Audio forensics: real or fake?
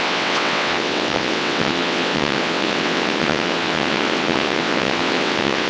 fake